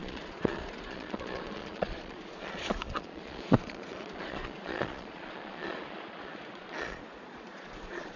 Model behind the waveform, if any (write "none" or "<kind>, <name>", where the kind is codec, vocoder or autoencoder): vocoder, Vocos